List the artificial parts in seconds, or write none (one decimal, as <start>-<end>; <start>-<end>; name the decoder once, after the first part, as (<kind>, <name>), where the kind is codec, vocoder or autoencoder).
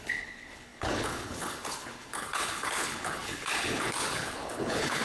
0.0-5.0 (codec, HILCodec)